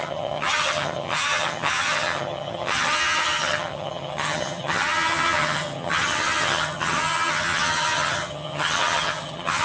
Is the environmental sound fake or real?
fake